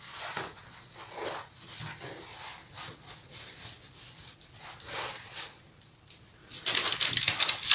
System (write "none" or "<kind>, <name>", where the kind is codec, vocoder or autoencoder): none